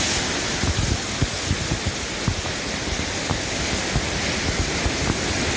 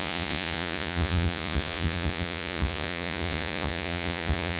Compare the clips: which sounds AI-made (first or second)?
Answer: second